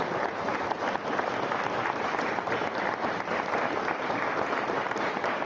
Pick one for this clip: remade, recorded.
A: remade